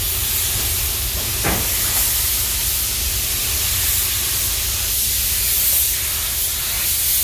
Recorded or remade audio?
recorded